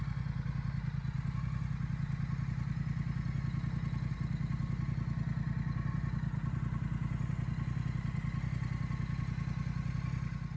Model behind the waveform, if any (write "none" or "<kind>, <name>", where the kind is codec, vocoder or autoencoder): none